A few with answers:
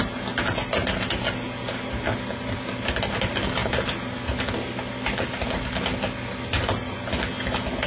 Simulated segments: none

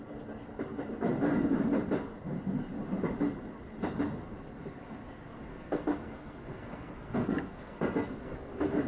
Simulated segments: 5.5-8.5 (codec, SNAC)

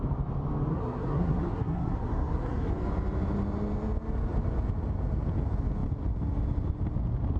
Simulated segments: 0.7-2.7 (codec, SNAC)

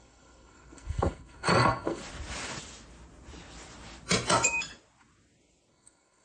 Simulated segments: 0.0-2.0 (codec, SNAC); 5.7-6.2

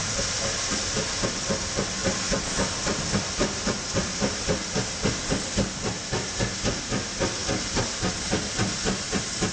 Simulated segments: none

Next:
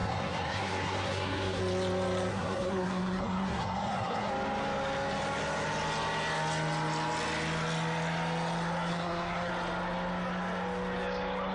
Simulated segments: 0.0-1.6 (codec, SNAC); 2.3-4.3; 8.9-9.5

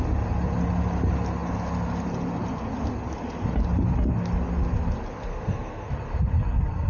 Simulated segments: 5.3-5.9 (codec, SNAC)

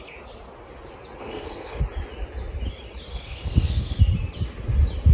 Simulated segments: 1.2-1.8 (codec, SNAC); 3.1-4.0